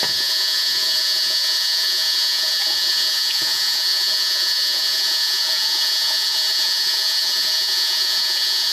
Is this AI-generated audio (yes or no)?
yes